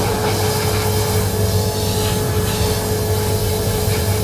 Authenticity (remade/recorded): recorded